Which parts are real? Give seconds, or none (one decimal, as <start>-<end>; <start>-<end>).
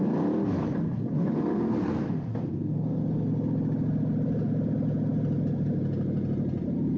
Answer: 0.0-1.1; 3.0-7.0